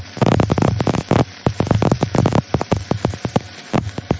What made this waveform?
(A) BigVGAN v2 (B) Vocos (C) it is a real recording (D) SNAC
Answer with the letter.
A